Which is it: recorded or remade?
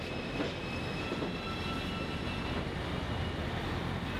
recorded